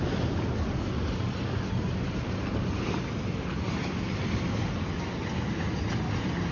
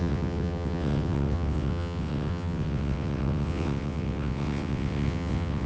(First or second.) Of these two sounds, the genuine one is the first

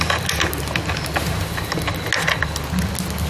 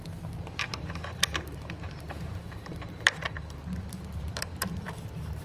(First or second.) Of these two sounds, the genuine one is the first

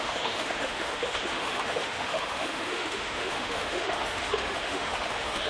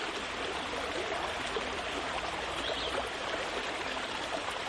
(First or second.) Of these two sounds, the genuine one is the second